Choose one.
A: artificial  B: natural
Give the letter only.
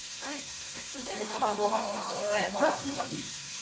A